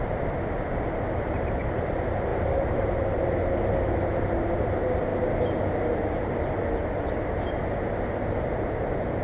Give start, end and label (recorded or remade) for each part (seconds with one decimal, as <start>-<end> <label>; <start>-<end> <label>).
0.0-2.3 recorded; 2.3-2.9 remade; 2.9-9.2 recorded